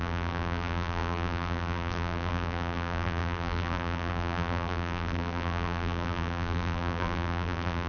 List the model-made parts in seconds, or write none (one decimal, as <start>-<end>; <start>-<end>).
0.0-7.9

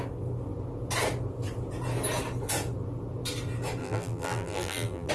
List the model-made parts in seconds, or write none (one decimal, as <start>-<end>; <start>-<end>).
3.8-5.1